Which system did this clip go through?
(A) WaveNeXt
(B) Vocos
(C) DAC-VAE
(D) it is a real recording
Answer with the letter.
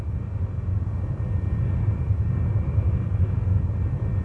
D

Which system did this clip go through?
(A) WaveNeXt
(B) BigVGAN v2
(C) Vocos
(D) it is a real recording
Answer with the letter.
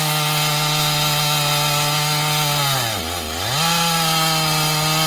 D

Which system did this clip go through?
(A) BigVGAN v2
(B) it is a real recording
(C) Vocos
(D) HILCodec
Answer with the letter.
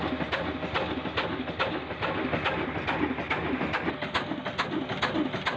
B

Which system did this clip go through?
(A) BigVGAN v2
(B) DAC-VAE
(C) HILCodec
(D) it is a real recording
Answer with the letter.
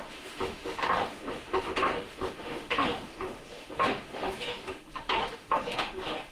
B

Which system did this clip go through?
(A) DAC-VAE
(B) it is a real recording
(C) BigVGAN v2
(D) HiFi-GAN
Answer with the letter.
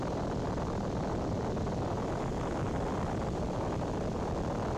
B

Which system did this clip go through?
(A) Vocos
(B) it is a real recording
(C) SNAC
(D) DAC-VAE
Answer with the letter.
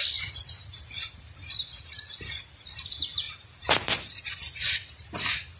B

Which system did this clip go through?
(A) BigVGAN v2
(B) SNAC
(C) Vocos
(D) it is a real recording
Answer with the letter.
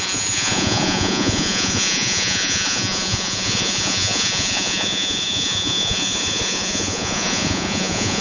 C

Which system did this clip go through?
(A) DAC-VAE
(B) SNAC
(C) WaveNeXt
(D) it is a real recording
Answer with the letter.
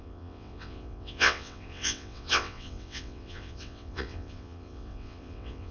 C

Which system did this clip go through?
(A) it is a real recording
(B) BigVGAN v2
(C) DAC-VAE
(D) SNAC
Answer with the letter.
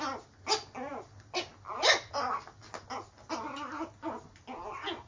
A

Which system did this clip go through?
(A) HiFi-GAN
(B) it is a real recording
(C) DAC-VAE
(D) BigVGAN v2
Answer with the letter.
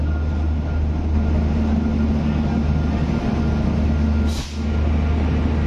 B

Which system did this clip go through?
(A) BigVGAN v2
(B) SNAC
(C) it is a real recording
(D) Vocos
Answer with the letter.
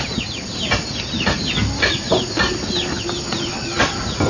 C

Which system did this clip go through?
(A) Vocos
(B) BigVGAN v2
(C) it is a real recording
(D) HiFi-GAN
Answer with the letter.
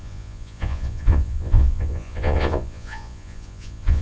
A